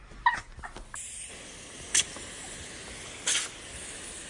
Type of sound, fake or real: real